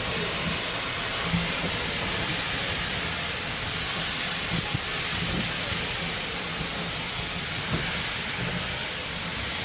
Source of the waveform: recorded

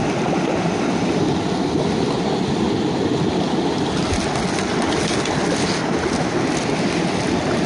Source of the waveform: recorded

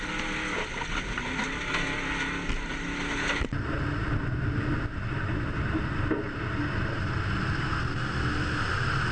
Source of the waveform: recorded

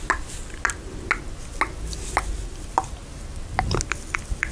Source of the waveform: recorded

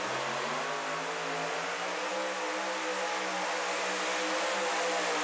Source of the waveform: recorded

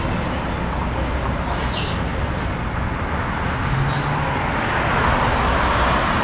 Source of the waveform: recorded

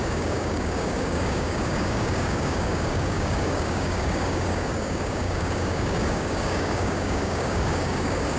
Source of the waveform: remade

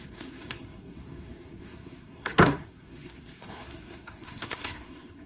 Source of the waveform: remade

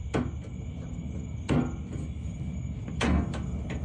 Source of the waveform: recorded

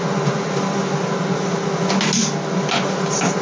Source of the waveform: recorded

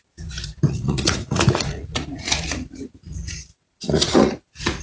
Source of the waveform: remade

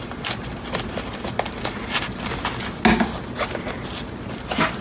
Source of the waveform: recorded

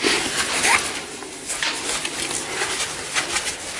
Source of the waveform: recorded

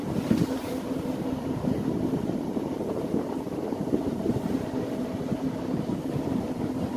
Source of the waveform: remade